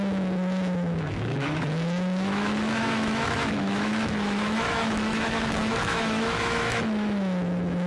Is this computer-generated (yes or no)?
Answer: yes